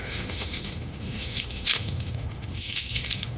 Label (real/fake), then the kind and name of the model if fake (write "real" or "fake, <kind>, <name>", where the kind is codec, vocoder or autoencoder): fake, autoencoder, DAC-VAE